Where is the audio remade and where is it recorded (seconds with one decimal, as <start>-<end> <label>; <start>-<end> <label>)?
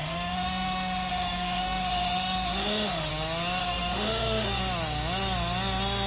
0.0-3.1 remade; 3.1-3.6 recorded; 3.6-4.6 remade; 4.6-6.1 recorded